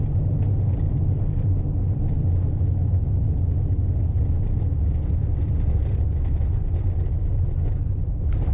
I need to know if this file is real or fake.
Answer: real